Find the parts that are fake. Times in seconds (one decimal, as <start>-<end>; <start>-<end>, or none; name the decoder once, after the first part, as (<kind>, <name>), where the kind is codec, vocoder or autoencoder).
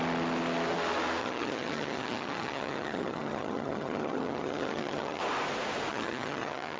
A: 1.2-5.2 (vocoder, HiFi-GAN); 5.9-6.8